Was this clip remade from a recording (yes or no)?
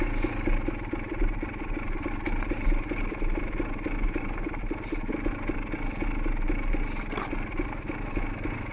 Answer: no